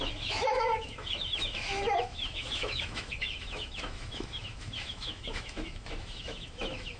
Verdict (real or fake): fake